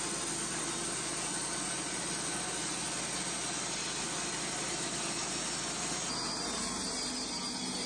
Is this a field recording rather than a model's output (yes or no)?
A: yes